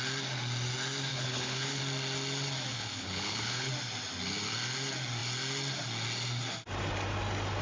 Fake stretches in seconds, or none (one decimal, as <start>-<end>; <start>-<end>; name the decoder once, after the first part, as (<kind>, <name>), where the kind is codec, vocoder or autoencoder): 1.1-1.8 (codec, HILCodec); 2.7-3.7